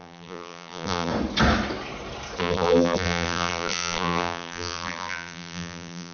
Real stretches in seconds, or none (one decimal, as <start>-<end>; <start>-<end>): 1.1-2.4